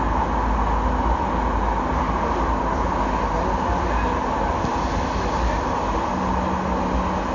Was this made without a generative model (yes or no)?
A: yes